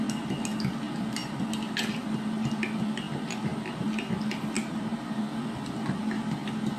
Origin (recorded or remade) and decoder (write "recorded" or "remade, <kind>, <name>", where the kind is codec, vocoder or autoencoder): recorded